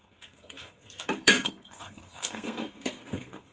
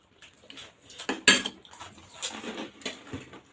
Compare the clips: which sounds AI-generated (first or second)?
first